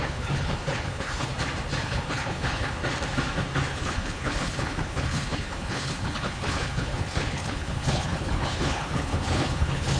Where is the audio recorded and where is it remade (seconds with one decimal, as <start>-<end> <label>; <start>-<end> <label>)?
0.0-1.3 remade; 1.3-1.8 recorded; 1.8-2.8 remade; 2.8-3.7 recorded; 3.7-10.0 remade